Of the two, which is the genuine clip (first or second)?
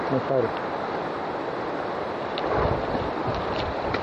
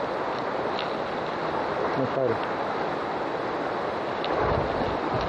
second